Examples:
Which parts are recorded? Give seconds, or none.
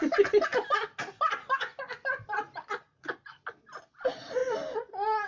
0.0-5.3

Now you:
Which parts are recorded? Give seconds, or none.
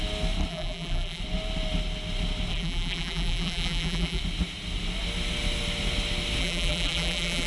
0.0-0.5; 1.2-2.5; 4.2-6.4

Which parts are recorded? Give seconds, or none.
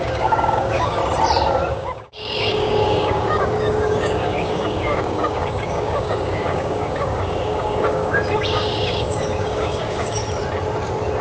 1.0-1.7; 10.2-11.2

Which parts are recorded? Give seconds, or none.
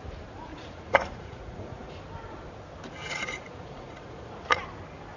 0.0-0.5; 2.0-3.0; 4.6-5.2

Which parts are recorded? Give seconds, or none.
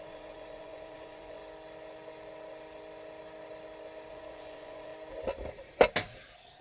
1.4-4.1; 4.9-6.6